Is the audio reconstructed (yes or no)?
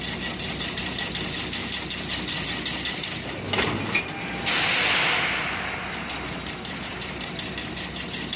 no